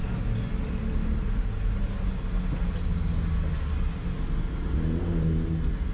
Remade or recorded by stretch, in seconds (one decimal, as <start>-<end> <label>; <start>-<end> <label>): 0.0-5.9 recorded